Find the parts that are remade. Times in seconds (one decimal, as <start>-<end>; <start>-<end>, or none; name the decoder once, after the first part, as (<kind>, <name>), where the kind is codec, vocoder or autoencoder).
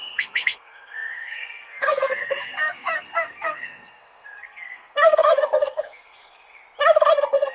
0.0-6.6 (codec, SNAC); 7.1-7.5